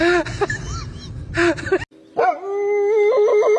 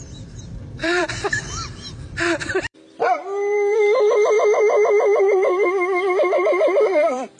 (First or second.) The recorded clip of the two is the first